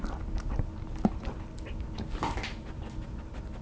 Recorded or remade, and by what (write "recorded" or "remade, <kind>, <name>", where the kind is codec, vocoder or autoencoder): recorded